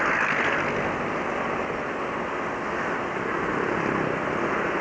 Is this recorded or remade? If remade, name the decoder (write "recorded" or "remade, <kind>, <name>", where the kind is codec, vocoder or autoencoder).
recorded